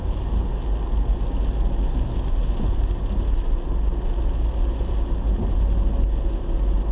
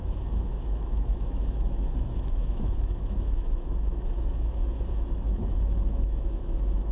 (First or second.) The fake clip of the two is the second